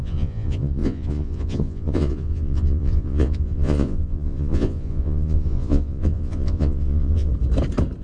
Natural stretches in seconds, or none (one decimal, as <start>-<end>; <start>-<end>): 7.3-8.0